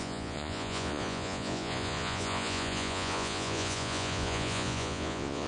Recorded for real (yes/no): no